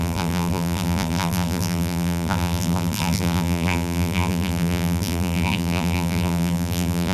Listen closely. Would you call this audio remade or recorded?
remade